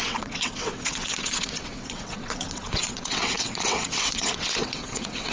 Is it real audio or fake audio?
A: fake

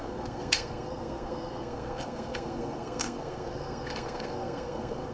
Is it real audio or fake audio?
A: fake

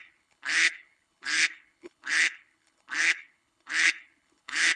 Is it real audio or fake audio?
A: fake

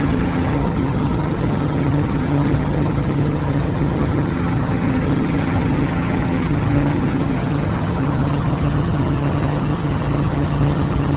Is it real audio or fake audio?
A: fake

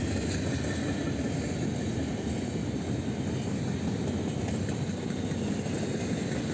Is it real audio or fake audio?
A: real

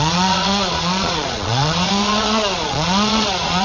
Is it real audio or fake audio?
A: fake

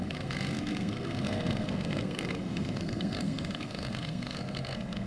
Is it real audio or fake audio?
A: fake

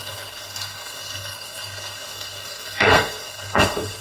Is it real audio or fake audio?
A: fake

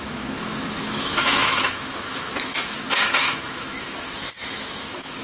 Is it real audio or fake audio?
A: fake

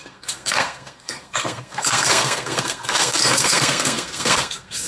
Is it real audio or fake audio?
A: fake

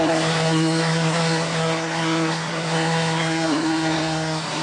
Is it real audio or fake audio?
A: fake